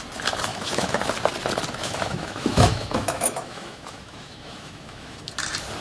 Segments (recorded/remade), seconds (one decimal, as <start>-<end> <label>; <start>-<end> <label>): 0.0-0.5 recorded; 0.5-1.0 remade; 1.0-1.8 recorded; 1.8-5.3 remade; 5.3-5.8 recorded